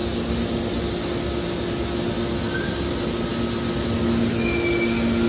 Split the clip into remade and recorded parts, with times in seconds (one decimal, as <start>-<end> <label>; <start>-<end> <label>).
0.0-5.3 recorded